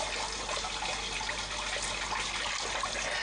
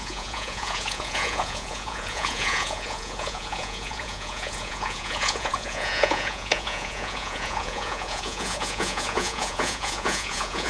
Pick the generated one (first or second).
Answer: second